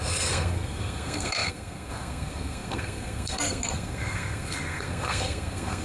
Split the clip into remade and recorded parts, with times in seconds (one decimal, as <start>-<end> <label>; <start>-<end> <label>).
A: 0.0-5.8 remade